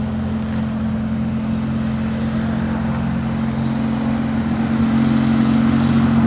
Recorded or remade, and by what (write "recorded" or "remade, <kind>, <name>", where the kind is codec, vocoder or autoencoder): recorded